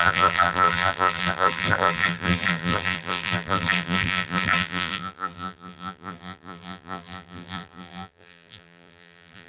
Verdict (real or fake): fake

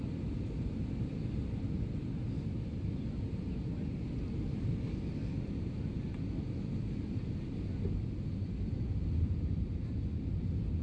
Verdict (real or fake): real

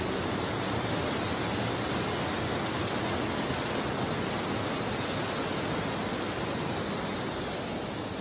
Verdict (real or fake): real